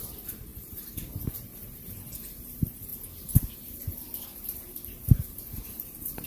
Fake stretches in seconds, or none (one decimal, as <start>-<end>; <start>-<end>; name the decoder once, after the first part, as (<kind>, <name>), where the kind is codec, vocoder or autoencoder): 0.0-6.3 (vocoder, BigVGAN v2)